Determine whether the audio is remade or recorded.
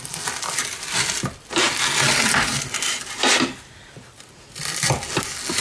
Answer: recorded